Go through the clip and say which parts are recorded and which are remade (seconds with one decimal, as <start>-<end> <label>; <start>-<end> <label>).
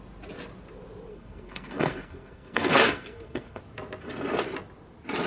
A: 0.0-1.1 recorded; 1.1-3.6 remade; 3.6-5.3 recorded